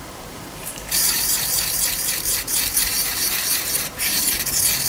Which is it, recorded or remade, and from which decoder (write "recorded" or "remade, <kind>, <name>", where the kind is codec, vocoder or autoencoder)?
remade, vocoder, BigVGAN v2